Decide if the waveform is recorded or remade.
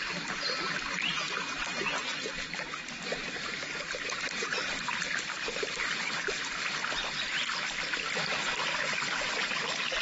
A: recorded